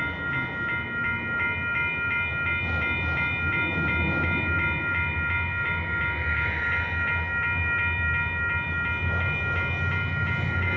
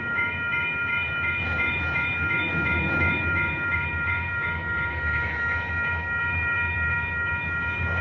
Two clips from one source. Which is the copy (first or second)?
second